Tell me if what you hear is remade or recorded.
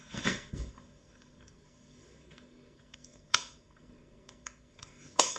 remade